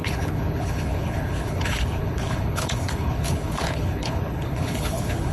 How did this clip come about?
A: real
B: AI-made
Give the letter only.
B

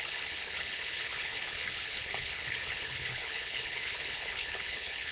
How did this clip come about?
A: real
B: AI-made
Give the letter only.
B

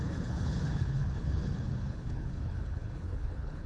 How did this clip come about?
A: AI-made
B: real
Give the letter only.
A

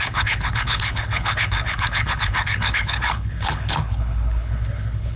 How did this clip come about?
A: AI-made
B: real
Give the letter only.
A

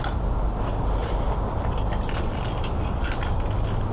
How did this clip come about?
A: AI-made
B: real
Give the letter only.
B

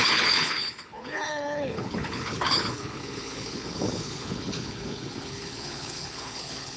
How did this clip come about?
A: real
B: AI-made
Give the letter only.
B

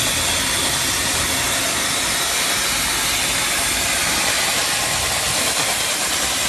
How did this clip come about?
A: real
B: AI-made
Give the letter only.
A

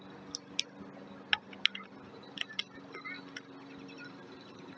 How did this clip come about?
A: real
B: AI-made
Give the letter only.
A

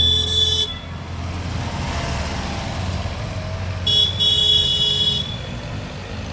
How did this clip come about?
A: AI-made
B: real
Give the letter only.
B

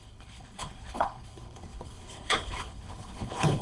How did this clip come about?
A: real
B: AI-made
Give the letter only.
B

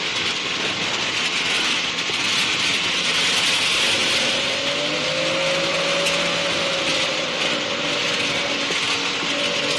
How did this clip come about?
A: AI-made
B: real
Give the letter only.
B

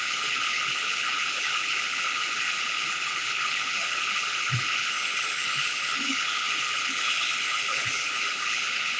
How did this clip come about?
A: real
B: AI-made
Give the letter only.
B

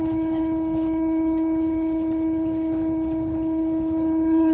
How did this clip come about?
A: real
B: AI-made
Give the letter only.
B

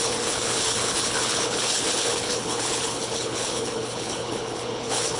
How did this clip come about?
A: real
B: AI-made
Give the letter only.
B